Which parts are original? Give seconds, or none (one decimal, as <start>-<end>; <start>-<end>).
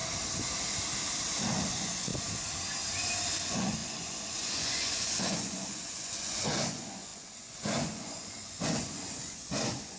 0.0-1.7; 2.1-3.4